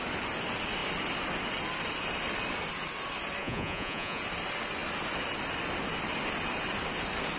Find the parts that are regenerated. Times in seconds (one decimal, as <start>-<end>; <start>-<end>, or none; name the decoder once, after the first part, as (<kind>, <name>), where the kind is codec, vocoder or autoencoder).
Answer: 3.4-4.2 (vocoder, Vocos)